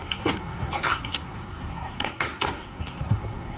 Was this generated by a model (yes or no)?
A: yes